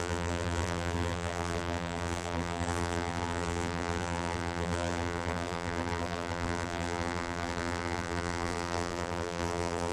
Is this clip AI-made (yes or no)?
yes